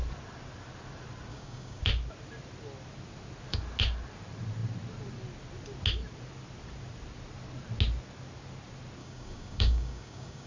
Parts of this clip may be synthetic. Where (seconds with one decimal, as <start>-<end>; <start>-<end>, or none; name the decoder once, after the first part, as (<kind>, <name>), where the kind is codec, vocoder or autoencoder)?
1.3-1.8 (codec, DAC); 9.0-10.5